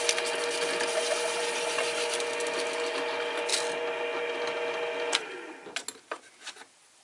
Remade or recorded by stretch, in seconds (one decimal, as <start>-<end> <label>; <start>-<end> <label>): 0.0-7.0 recorded